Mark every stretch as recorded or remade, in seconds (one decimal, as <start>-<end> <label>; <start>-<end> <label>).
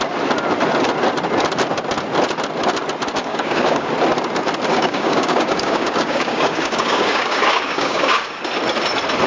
0.0-3.2 recorded; 3.2-3.9 remade; 3.9-4.7 recorded; 4.7-8.4 remade; 8.4-9.3 recorded